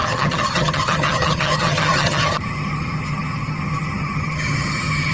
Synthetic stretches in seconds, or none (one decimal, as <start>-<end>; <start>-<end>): 0.0-5.1